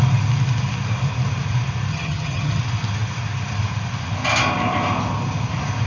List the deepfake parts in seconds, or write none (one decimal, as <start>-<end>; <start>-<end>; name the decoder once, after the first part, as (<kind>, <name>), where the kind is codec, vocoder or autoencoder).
1.9-2.6 (vocoder, HiFi-GAN)